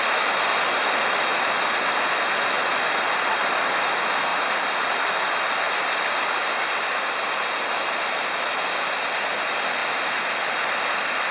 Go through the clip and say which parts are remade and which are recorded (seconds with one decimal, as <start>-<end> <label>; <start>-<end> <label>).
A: 0.0-11.3 recorded